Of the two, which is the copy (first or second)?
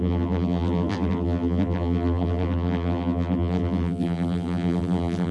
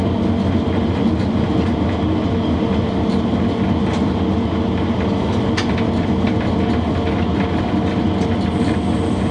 first